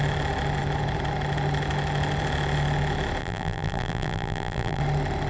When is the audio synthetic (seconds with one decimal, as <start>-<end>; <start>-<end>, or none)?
3.2-4.8